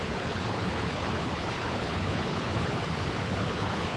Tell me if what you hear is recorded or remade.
remade